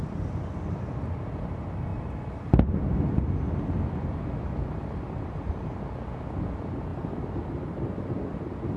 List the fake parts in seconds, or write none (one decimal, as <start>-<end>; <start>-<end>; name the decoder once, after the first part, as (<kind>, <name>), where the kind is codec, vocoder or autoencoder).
none